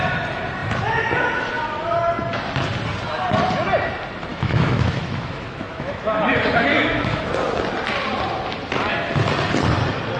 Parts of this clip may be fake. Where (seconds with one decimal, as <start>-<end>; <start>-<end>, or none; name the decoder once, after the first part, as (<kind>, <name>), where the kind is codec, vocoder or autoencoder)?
4.3-6.0 (autoencoder, DAC-VAE); 6.7-7.3